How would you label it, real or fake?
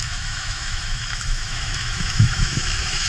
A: fake